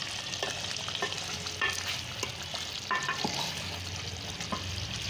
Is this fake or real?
real